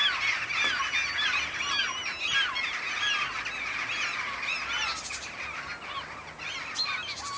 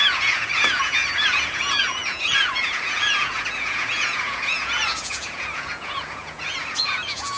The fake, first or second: second